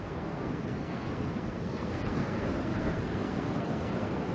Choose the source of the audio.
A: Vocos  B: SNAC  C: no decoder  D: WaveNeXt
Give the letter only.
B